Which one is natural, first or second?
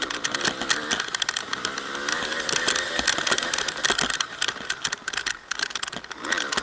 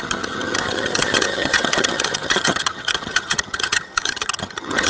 first